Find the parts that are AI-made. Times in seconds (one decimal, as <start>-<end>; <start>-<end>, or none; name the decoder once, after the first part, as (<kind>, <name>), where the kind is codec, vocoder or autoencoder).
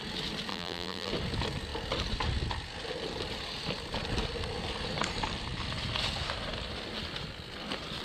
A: 0.5-1.1 (vocoder, BigVGAN v2)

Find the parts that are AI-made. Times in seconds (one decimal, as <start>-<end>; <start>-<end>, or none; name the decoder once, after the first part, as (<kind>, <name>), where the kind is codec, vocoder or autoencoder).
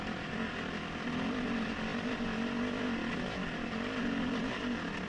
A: none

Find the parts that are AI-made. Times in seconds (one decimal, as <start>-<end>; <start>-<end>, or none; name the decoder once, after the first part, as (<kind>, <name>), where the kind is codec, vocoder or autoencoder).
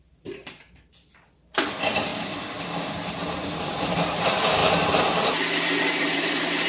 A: 0.0-2.1 (vocoder, BigVGAN v2); 2.9-4.6; 5.8-6.7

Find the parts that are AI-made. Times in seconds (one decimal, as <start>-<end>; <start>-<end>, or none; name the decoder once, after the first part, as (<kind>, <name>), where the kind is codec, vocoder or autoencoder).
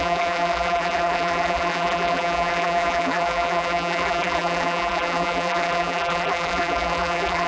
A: 0.0-7.5 (vocoder, BigVGAN v2)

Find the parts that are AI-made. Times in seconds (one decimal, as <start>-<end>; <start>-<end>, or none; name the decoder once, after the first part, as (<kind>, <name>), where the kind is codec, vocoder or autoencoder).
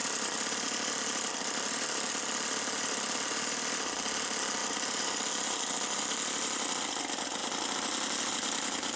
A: 0.0-3.8 (vocoder, BigVGAN v2); 4.6-7.0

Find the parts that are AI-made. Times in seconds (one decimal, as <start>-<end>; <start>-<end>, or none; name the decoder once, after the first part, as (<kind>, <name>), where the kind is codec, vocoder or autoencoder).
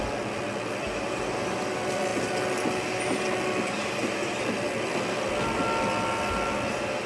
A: none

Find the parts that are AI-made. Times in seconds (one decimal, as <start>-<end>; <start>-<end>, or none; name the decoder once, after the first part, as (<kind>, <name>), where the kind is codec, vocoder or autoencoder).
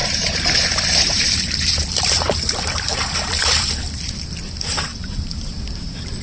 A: 0.0-3.7 (vocoder, BigVGAN v2); 4.9-5.5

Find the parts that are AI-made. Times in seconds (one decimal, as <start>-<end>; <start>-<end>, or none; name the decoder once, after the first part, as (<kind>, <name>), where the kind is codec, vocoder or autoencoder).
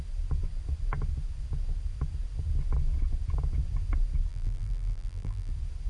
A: 4.3-5.5 (vocoder, BigVGAN v2)